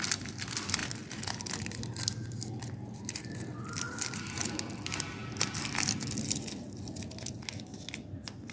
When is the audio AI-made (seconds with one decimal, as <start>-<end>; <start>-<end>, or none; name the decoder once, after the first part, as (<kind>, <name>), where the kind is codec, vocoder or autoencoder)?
none

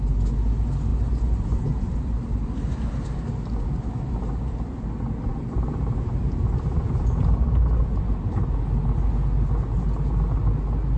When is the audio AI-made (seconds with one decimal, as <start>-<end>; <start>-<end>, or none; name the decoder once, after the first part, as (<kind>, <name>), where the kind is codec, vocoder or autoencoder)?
none

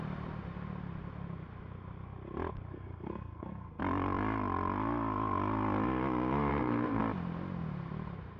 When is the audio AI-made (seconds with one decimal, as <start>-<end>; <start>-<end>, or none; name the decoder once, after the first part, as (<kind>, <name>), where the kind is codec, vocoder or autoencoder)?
2.7-3.8 (codec, SNAC); 6.5-7.0

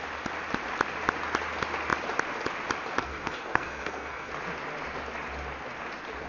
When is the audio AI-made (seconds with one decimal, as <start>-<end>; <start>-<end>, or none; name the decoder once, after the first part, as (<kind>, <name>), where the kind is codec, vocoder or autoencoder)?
3.0-4.3 (codec, SNAC)

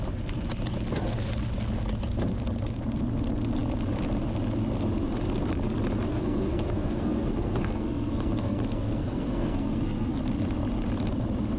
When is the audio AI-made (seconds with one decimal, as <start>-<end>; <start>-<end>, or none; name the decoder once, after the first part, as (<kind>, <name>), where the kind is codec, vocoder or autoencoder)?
6.1-10.2 (codec, SNAC)